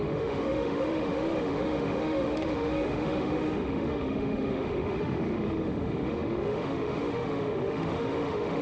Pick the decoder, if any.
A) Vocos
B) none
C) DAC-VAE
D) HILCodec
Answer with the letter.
C